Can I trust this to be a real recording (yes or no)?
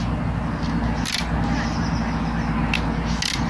yes